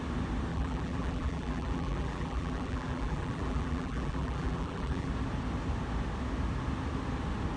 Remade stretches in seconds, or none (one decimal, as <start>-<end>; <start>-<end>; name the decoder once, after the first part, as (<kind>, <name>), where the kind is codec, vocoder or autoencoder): 0.5-5.1 (vocoder, BigVGAN v2)